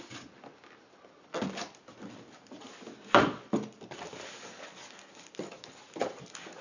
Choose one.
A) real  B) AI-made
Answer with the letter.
A